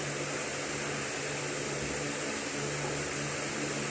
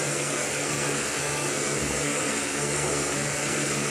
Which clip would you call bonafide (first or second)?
first